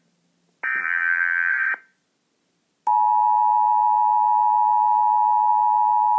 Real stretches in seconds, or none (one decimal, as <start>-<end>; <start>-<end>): 0.0-0.8; 1.5-6.2

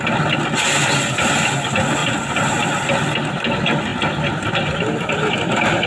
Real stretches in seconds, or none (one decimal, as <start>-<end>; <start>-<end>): 0.0-5.9